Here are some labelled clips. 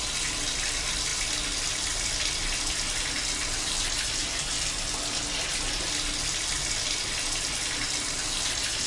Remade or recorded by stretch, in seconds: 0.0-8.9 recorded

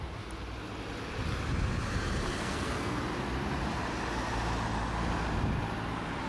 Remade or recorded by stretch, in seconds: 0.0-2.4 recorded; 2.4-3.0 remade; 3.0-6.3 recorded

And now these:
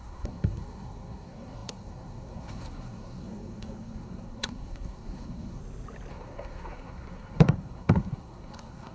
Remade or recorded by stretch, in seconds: 0.0-5.6 remade; 5.6-6.1 recorded; 6.1-8.9 remade

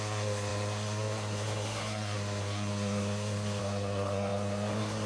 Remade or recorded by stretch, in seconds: 0.0-5.1 remade

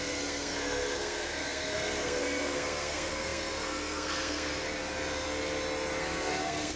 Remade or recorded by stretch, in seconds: 0.0-4.5 remade; 4.5-6.0 recorded; 6.0-6.8 remade